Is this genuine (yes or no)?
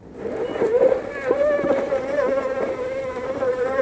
yes